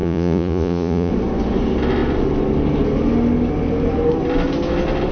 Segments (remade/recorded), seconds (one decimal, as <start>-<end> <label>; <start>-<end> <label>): 0.0-1.1 remade; 1.1-5.1 recorded